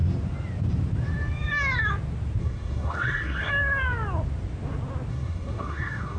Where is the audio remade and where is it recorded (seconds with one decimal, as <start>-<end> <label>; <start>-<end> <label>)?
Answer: 0.0-2.4 recorded; 2.4-3.5 remade; 3.5-5.1 recorded; 5.1-6.2 remade